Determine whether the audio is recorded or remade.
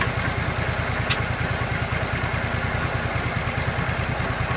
recorded